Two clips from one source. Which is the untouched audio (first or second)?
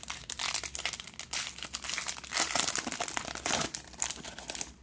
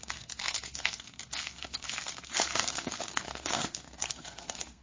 first